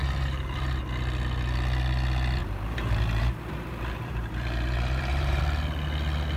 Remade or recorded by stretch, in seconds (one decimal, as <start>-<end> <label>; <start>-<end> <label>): 0.0-0.8 remade; 0.8-2.4 recorded; 2.4-5.4 remade; 5.4-6.4 recorded